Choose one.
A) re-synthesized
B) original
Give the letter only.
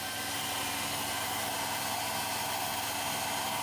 B